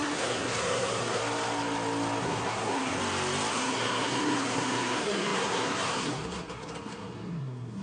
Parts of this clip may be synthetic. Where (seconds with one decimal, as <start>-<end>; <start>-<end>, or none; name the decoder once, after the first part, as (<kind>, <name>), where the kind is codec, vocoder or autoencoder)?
0.0-1.2 (codec, SNAC); 2.2-3.0; 3.5-7.8